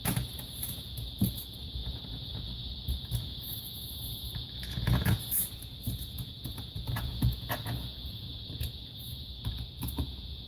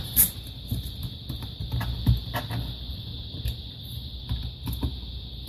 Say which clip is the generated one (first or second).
first